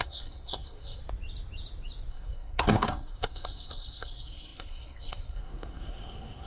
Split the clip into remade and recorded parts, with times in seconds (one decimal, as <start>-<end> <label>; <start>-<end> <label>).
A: 0.0-1.0 remade; 1.0-2.1 recorded; 2.1-6.5 remade